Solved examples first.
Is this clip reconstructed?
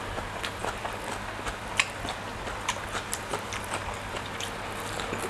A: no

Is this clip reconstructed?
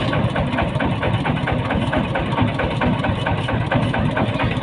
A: no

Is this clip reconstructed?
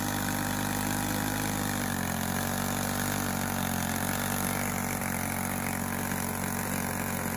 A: no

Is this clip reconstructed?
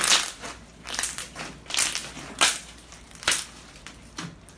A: no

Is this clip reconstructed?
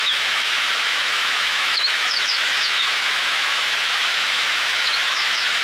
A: yes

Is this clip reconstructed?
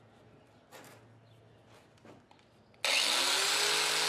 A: no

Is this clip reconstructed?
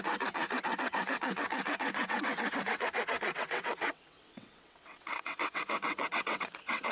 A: yes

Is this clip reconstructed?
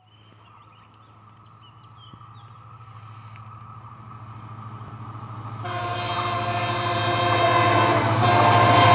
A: no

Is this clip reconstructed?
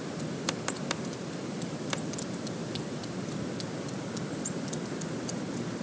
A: yes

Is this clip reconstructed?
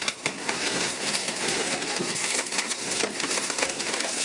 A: yes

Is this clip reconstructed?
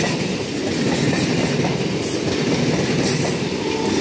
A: no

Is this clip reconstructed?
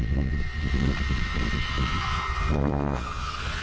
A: yes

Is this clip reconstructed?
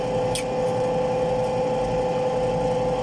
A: no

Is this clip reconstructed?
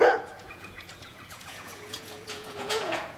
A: yes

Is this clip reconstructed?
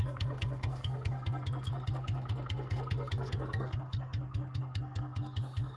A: yes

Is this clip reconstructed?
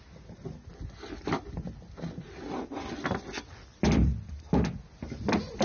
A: no